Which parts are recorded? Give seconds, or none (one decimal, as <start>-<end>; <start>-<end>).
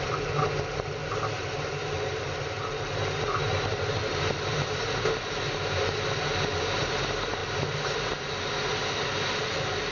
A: 0.0-9.9